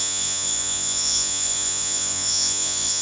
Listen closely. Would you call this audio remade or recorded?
remade